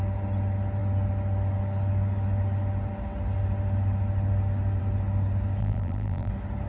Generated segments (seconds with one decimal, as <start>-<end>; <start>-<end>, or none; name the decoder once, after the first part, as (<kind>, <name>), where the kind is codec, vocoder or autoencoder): 5.6-6.3 (vocoder, BigVGAN v2)